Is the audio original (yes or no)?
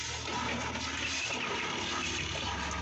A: yes